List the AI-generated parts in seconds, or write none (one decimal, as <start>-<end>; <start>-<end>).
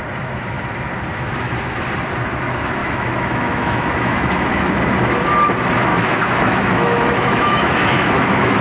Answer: 1.1-1.6; 2.8-4.6; 5.9-8.6